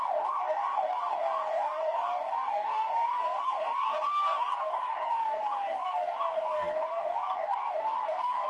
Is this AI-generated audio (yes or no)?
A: yes